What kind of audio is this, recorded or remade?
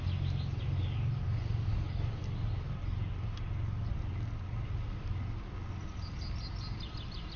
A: recorded